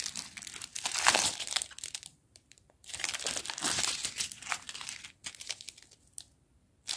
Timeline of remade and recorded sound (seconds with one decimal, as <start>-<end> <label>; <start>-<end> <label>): 0.0-0.7 recorded; 0.7-1.5 remade; 1.5-2.2 recorded; 2.2-3.4 remade; 3.4-7.0 recorded